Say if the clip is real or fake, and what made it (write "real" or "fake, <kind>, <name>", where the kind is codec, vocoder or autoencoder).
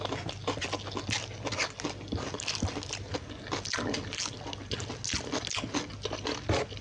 real